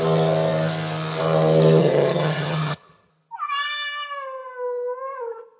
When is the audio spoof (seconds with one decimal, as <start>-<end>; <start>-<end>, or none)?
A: 1.8-3.1